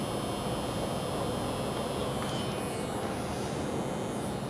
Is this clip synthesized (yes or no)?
no